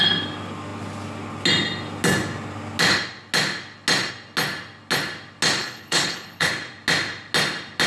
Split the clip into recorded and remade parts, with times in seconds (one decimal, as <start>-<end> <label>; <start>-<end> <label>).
0.0-5.6 recorded; 5.6-6.5 remade; 6.5-7.9 recorded